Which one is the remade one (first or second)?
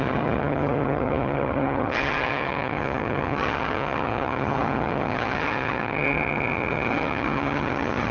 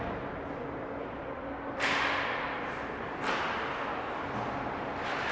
first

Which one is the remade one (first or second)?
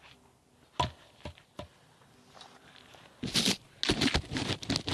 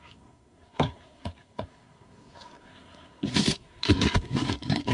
second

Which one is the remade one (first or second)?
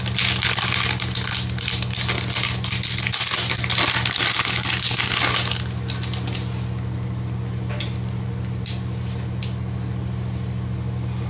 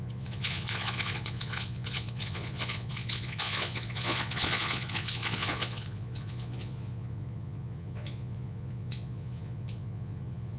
second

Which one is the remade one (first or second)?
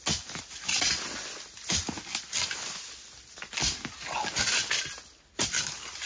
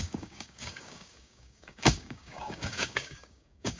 second